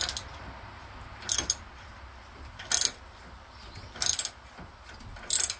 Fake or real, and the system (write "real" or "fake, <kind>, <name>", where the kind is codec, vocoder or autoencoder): real